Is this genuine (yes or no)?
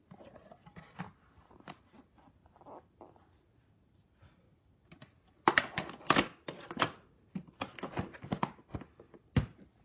yes